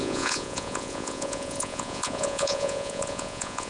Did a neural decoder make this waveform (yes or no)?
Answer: yes